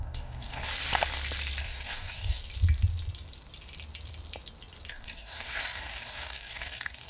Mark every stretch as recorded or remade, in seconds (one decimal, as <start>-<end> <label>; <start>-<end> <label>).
0.0-0.7 remade; 0.7-1.6 recorded; 1.6-2.4 remade; 2.4-4.9 recorded; 4.9-7.1 remade